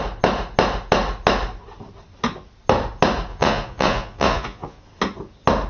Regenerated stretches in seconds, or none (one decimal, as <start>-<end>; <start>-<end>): 3.3-4.8